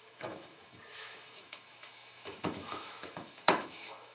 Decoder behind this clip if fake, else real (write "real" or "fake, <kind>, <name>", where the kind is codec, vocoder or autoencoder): fake, autoencoder, DAC-VAE